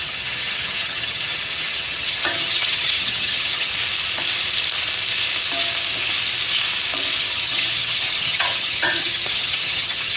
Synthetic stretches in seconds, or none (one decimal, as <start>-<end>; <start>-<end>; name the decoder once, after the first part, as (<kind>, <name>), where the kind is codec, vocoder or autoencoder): 0.0-3.7 (vocoder, HiFi-GAN); 7.2-10.2